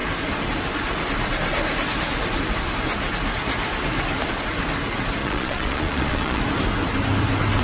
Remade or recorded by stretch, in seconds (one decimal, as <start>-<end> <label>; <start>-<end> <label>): 0.0-5.2 recorded; 5.2-6.4 remade; 6.4-7.6 recorded